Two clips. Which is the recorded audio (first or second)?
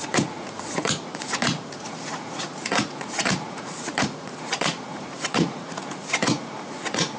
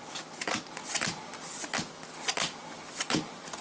second